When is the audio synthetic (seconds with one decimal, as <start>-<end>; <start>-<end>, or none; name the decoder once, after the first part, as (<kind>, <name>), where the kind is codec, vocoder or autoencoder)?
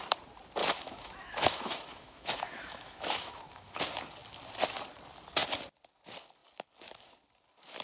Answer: 0.6-3.8 (autoencoder, DAC-VAE)